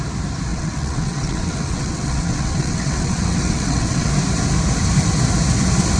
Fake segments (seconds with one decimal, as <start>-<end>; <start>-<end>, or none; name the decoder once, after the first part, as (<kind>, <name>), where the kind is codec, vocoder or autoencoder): 0.5-4.1 (vocoder, WaveNeXt)